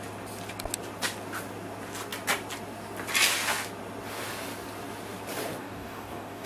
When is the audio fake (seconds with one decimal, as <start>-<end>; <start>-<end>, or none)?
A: 5.6-6.5